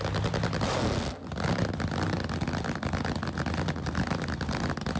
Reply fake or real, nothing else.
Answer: real